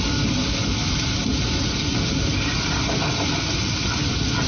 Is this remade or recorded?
recorded